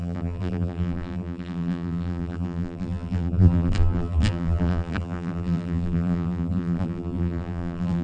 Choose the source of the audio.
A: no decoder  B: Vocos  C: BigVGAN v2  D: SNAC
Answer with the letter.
C